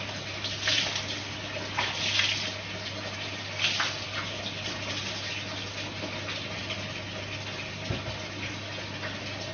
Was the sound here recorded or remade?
recorded